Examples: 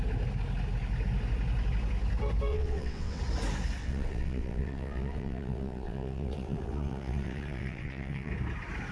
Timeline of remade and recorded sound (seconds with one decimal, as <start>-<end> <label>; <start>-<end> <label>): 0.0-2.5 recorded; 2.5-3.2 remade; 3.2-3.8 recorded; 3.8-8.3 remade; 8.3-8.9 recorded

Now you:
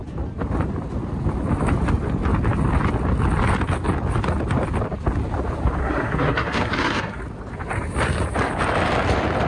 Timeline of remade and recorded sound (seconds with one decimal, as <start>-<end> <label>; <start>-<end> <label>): 0.0-5.8 recorded; 5.8-7.2 remade; 7.2-9.5 recorded

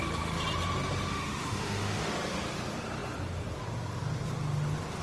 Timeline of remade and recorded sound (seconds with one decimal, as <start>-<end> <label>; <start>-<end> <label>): 0.0-1.1 recorded; 1.1-2.1 remade; 2.1-5.0 recorded

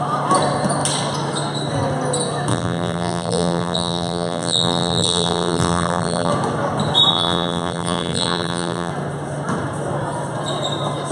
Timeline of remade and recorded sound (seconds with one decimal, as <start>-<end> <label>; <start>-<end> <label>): 0.0-2.5 recorded; 2.5-6.3 remade; 6.3-7.1 recorded; 7.1-8.9 remade; 8.9-11.1 recorded

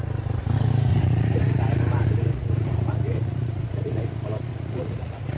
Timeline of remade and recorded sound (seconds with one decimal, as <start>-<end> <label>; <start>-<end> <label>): 0.0-0.9 recorded; 0.9-4.1 remade; 4.1-4.5 recorded; 4.5-5.4 remade

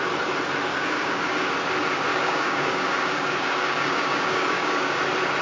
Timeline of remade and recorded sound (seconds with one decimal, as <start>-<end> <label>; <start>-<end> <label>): 0.0-0.7 recorded; 0.7-1.5 remade; 1.5-2.1 recorded; 2.1-5.0 remade; 5.0-5.4 recorded